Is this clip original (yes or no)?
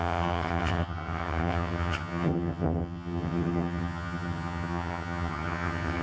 no